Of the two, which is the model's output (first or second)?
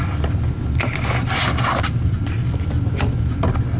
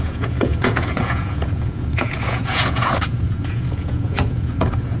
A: second